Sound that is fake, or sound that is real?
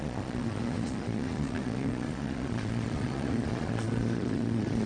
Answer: fake